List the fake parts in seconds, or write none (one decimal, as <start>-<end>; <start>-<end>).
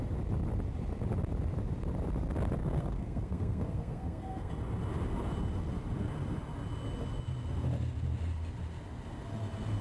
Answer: 2.6-4.5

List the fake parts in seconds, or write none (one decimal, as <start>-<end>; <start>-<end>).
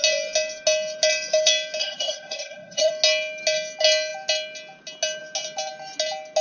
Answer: 1.8-2.9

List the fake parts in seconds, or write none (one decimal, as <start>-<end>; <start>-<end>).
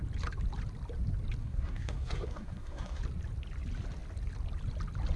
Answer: 1.4-3.0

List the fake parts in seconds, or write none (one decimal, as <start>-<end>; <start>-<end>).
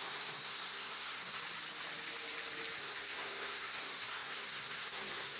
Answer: 0.0-1.4; 2.8-5.4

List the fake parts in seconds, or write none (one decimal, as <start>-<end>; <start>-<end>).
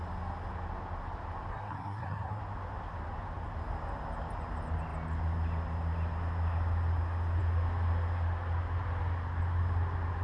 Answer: 1.5-2.4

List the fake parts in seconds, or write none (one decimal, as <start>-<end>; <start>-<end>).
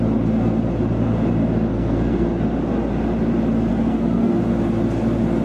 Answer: 1.7-2.4; 3.7-4.3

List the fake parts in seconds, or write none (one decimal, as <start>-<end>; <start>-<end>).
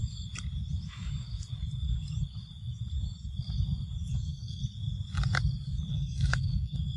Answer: 4.1-4.6; 5.9-7.0